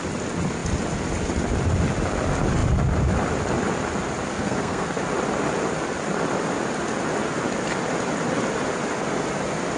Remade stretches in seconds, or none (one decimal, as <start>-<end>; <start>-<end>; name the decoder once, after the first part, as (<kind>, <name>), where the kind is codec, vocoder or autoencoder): 4.3-5.0 (codec, SNAC)